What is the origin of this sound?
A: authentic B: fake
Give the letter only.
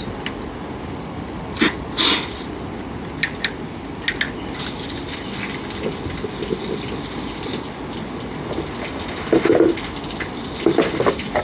A